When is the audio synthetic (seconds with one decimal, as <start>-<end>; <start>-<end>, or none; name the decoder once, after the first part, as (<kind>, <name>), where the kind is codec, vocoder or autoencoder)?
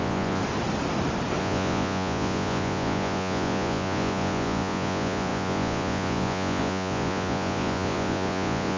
0.0-0.4 (vocoder, Vocos); 1.4-8.8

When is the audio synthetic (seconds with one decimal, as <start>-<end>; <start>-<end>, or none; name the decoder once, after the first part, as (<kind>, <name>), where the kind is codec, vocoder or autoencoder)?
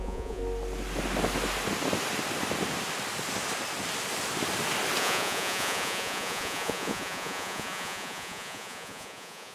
0.0-0.4 (vocoder, Vocos); 5.0-9.5